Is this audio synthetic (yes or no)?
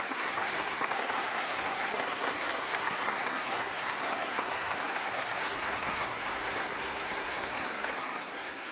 yes